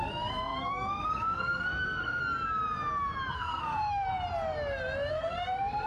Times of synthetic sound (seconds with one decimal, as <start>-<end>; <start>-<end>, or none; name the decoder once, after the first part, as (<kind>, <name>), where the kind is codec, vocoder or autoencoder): 0.0-2.2 (codec, SNAC); 3.3-4.1; 5.1-5.9